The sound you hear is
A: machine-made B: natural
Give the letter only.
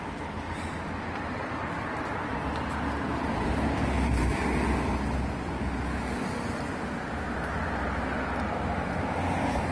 B